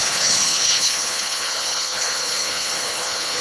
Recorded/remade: remade